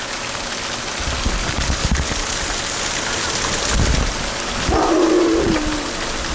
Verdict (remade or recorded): recorded